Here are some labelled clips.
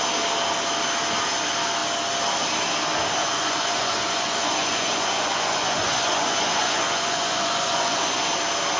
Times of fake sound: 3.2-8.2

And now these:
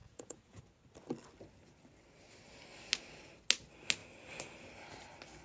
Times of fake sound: 0.0-0.6

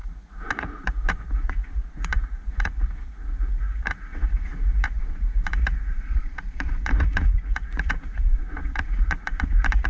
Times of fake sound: 0.0-9.9

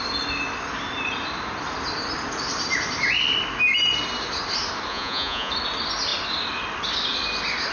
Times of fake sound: 4.9-5.5

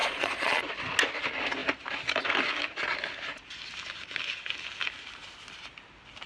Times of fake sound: 0.0-0.6

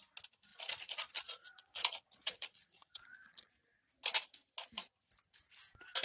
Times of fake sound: 0.5-3.5